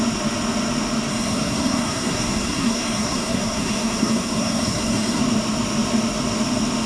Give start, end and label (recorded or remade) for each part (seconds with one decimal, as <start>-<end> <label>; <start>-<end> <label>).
0.0-1.1 recorded; 1.1-5.2 remade; 5.2-6.9 recorded